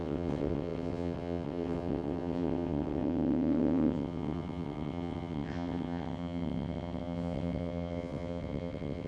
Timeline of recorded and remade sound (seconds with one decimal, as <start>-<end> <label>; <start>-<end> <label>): 0.0-9.1 remade